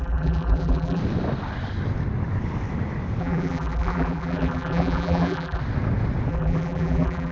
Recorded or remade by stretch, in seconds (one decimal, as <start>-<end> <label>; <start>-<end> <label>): 0.0-1.0 remade; 1.0-3.2 recorded; 3.2-5.6 remade; 5.6-6.3 recorded; 6.3-7.3 remade